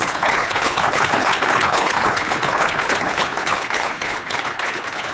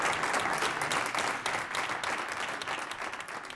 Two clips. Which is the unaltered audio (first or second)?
second